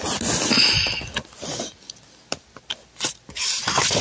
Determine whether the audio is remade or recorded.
recorded